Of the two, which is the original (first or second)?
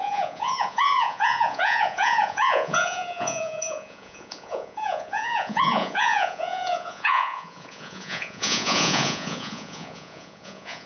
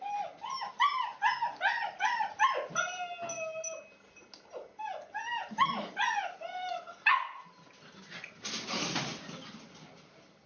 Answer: second